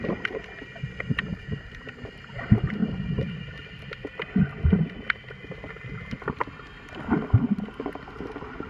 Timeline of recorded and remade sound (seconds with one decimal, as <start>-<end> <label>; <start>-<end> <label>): 0.0-1.3 recorded; 1.3-2.4 remade; 2.4-8.7 recorded